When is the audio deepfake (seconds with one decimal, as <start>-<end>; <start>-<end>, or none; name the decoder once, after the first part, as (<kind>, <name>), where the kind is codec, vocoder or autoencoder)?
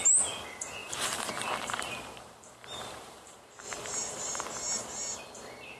0.8-4.3 (vocoder, BigVGAN v2)